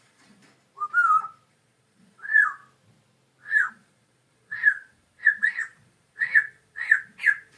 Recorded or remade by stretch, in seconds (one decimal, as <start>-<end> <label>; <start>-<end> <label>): 0.0-0.4 remade; 0.4-1.5 recorded; 1.5-2.6 remade; 2.6-3.7 recorded; 3.7-7.6 remade

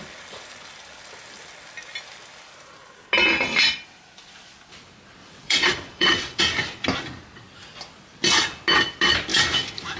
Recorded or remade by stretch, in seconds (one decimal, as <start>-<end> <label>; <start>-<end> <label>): 0.0-5.2 recorded; 5.2-6.4 remade; 6.4-10.0 recorded

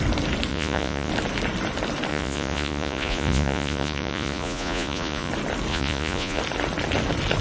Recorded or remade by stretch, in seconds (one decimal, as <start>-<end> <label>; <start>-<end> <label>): 0.0-0.5 recorded; 0.5-1.1 remade; 1.1-2.1 recorded; 2.1-5.3 remade; 5.3-5.7 recorded; 5.7-6.4 remade; 6.4-7.4 recorded

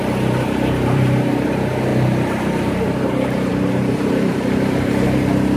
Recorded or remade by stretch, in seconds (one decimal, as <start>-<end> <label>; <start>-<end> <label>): 0.0-1.9 remade; 1.9-2.7 recorded; 2.7-5.6 remade

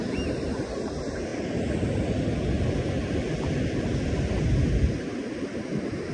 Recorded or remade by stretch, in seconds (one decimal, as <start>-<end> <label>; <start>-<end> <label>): 0.0-6.1 recorded

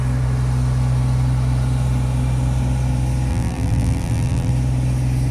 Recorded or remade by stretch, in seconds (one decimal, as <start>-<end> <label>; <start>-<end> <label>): 0.0-3.3 recorded; 3.3-4.5 remade; 4.5-5.3 recorded